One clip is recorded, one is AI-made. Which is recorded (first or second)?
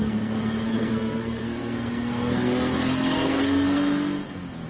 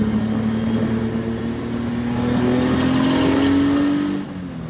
second